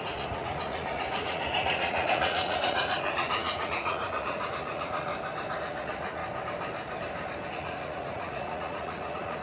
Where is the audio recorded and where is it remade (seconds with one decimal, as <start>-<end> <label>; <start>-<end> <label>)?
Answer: 0.0-5.1 remade; 5.1-5.6 recorded; 5.6-6.2 remade; 6.2-7.5 recorded; 7.5-9.4 remade